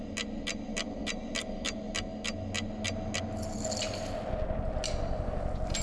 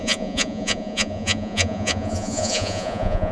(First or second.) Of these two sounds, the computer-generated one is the second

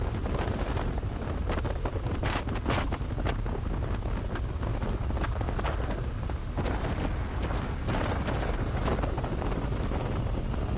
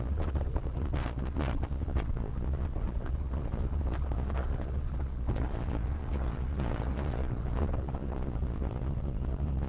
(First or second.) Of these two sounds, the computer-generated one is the second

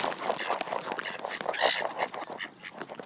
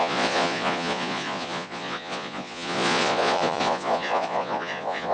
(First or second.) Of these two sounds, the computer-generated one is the second